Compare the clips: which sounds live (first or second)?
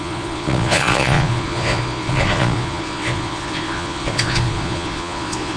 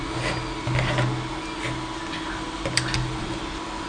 second